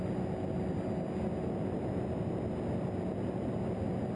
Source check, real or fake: real